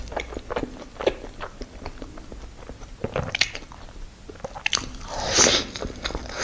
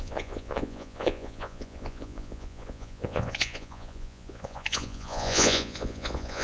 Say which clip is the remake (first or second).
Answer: second